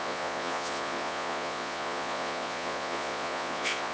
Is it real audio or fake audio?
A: fake